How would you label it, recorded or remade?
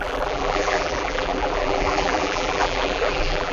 remade